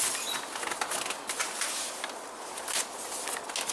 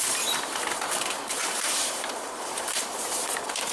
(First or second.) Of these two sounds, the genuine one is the first